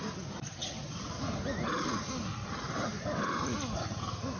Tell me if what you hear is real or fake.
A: real